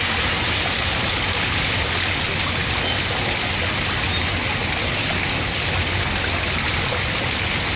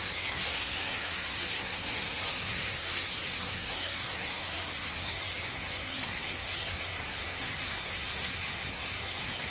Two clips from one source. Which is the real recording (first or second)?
first